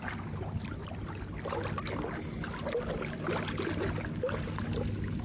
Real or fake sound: real